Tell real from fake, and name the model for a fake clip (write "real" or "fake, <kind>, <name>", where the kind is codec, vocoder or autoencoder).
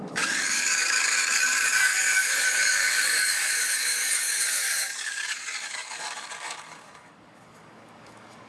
fake, codec, DAC